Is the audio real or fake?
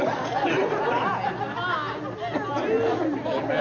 real